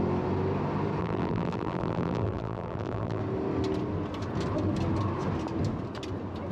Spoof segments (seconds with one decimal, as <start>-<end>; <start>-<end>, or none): 1.0-3.2